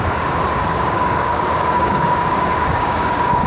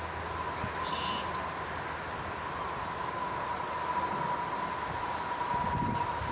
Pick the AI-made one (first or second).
first